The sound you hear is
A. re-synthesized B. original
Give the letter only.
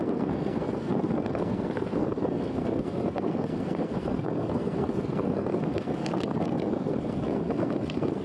A